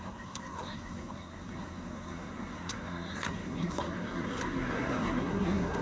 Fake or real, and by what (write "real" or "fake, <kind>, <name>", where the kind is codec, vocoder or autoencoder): fake, codec, SNAC